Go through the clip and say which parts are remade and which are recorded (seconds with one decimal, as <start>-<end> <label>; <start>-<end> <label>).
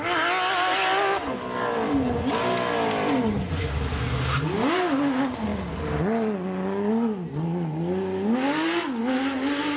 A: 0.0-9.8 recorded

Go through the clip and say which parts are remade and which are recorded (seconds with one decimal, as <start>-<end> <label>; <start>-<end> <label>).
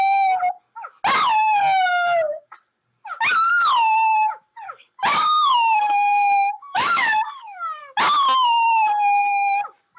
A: 0.0-5.1 recorded; 5.1-7.8 remade; 7.8-10.0 recorded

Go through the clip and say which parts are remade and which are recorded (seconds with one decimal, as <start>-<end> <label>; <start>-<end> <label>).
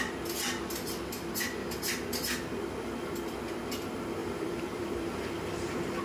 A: 0.0-4.2 recorded; 4.2-6.0 remade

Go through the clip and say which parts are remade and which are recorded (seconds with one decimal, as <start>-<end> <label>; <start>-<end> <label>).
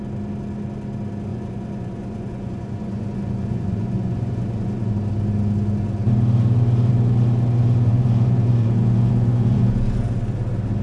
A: 0.0-1.3 recorded; 1.3-4.9 remade; 4.9-7.9 recorded; 7.9-10.0 remade; 10.0-10.8 recorded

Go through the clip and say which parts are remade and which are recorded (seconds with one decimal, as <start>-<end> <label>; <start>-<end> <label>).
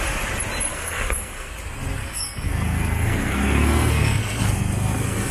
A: 0.0-0.7 recorded; 0.7-1.5 remade; 1.5-2.0 recorded; 2.0-5.3 remade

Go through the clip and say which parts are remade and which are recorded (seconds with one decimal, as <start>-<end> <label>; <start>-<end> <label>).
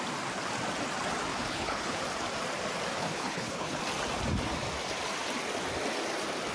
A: 0.0-1.3 recorded; 1.3-2.0 remade; 2.0-3.0 recorded; 3.0-3.8 remade; 3.8-6.5 recorded